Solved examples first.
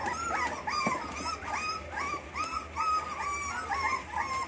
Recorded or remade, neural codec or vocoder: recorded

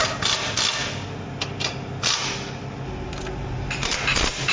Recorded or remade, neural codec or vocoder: recorded